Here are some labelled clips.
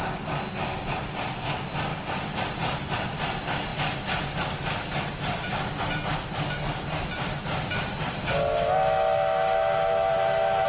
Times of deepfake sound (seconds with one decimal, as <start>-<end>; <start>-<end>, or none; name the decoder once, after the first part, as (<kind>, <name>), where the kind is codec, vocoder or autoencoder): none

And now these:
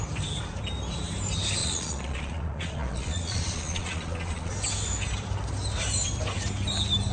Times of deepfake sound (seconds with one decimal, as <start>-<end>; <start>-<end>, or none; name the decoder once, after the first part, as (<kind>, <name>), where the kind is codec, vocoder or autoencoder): 1.6-4.5 (vocoder, Vocos)

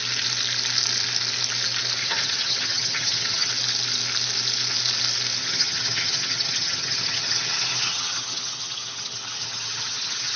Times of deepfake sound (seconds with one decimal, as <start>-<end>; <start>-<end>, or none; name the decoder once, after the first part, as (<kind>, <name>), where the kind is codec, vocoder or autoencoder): 2.0-3.5 (vocoder, HiFi-GAN); 5.4-10.4

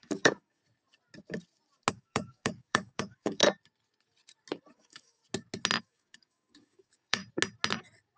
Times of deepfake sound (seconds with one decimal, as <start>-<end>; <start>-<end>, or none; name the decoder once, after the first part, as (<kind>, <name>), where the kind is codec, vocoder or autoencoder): 0.0-0.6 (codec, DAC); 1.9-3.4; 4.7-5.2; 5.8-7.2